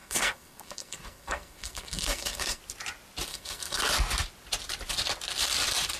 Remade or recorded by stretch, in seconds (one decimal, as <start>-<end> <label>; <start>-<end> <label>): 0.0-2.6 remade; 2.6-3.3 recorded; 3.3-3.8 remade; 3.8-6.0 recorded